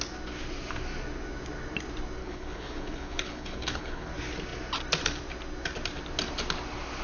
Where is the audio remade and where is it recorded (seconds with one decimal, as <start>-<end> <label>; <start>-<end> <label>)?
0.0-2.2 recorded; 2.2-4.1 remade; 4.1-7.0 recorded